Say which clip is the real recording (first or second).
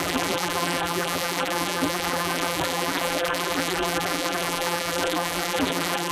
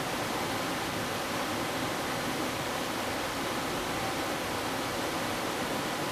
second